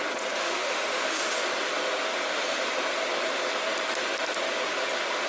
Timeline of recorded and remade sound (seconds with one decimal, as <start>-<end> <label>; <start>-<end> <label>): 0.0-0.4 recorded; 0.4-1.4 remade; 1.4-5.3 recorded